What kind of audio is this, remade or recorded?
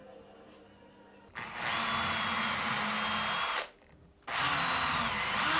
recorded